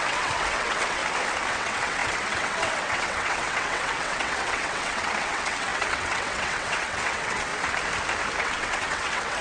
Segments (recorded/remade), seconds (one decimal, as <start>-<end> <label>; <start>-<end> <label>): 0.0-1.0 remade; 1.0-1.5 recorded; 1.5-7.5 remade; 7.5-8.4 recorded; 8.4-9.4 remade